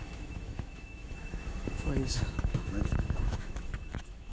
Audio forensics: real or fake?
fake